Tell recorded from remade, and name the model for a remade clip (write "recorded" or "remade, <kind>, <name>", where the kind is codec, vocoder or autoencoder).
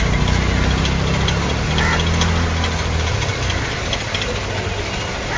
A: recorded